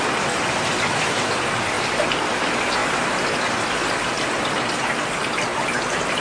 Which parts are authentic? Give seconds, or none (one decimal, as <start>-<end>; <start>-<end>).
0.0-6.2